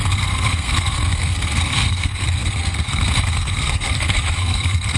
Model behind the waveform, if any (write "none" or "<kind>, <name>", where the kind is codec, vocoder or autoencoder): codec, SNAC